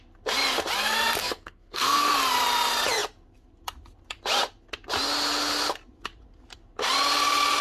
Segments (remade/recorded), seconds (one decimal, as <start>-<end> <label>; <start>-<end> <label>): 0.0-1.2 recorded; 1.2-2.1 remade; 2.1-7.6 recorded